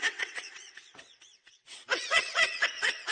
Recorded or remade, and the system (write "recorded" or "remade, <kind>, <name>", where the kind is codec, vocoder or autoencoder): remade, vocoder, WaveNeXt